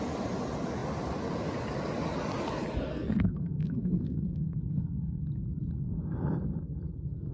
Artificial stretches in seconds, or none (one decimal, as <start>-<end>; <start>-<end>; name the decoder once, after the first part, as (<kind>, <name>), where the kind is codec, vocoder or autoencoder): 2.9-5.2 (codec, SNAC)